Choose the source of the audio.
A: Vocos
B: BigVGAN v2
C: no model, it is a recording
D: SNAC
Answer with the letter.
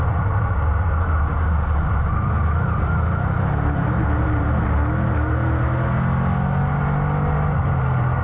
C